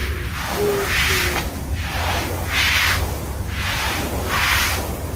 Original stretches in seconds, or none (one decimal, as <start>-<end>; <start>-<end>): 0.0-5.2